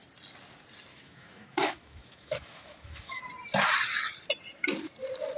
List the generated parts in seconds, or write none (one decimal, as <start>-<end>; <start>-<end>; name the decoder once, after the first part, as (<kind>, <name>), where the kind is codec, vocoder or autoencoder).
0.9-3.2 (autoencoder, DAC-VAE)